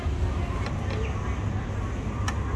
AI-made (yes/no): no